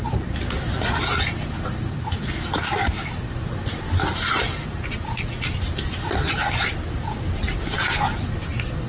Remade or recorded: remade